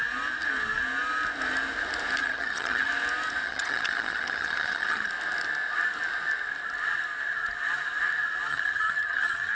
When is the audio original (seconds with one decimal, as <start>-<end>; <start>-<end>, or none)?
0.0-2.2; 2.9-3.4; 5.1-8.5